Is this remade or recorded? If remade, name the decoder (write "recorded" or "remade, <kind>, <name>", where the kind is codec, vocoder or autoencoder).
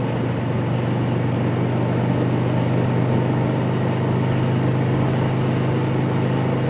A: recorded